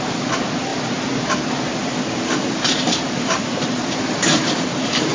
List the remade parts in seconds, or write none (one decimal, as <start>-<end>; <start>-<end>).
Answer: 1.8-5.1